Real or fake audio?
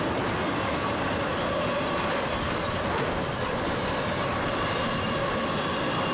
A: fake